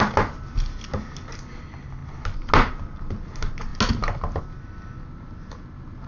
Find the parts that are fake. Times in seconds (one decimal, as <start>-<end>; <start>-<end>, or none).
none